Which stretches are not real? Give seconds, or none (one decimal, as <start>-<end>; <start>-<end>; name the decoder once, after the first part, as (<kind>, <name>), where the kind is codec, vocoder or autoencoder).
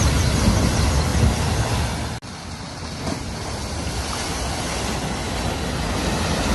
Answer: none